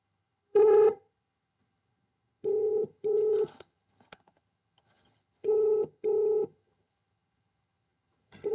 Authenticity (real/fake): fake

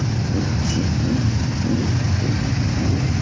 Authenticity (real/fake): real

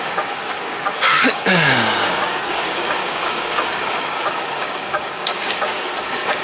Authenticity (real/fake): fake